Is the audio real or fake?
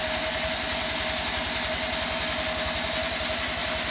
real